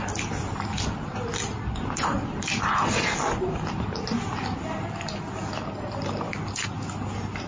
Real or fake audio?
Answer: real